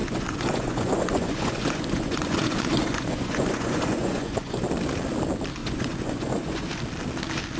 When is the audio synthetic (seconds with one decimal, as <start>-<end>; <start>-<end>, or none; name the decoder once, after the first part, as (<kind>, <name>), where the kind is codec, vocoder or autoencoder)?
0.0-4.6 (vocoder, Vocos); 5.6-6.8